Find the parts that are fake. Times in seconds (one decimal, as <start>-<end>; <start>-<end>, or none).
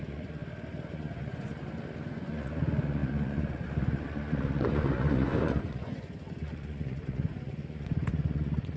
0.0-0.4; 0.9-1.5; 2.0-8.8